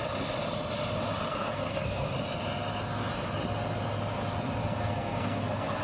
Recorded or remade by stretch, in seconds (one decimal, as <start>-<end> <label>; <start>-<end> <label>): 0.0-1.3 recorded; 1.3-2.1 remade; 2.1-4.6 recorded; 4.6-5.8 remade